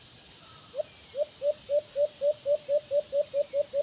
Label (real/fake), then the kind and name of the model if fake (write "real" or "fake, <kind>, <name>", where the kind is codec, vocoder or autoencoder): real